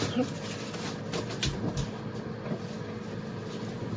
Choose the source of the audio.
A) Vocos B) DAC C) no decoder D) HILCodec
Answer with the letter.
C